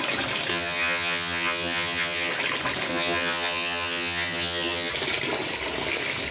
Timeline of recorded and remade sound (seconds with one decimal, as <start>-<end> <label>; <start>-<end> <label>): 0.0-0.5 recorded; 0.5-2.3 remade; 2.3-2.9 recorded; 2.9-4.9 remade; 4.9-6.3 recorded